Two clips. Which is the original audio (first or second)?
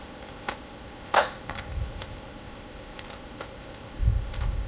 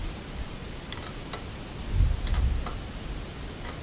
second